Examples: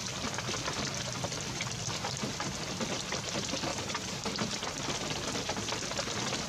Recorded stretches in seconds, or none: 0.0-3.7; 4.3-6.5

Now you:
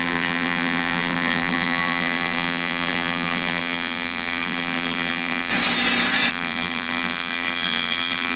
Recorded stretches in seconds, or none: 5.5-6.3

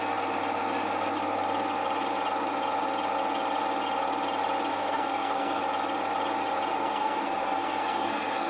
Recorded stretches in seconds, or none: 0.0-4.7; 5.6-6.7

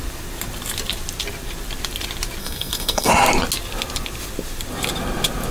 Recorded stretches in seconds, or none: 0.0-2.4; 3.1-5.5

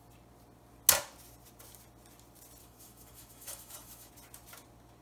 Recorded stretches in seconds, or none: 0.0-2.6; 4.1-5.0

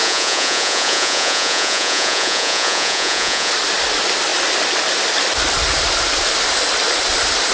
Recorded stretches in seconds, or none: 3.5-7.5

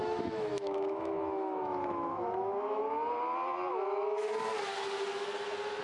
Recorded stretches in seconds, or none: 2.8-3.7; 4.3-5.8

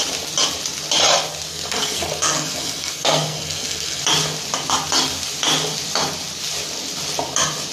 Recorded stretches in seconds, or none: 0.0-1.5; 4.0-7.7